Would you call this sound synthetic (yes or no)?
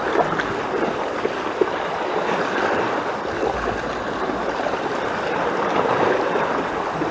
no